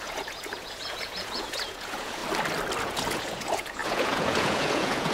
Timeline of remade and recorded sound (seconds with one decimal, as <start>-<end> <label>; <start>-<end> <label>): 0.0-2.2 remade; 2.2-2.8 recorded; 2.8-5.1 remade